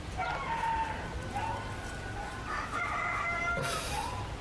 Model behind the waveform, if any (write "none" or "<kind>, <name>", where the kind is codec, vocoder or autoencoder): none